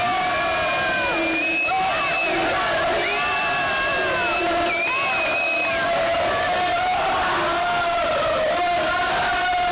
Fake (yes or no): no